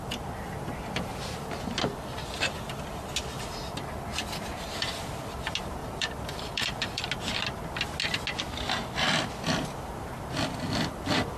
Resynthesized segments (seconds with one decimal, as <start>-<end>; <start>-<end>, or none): 1.1-1.6; 5.8-7.0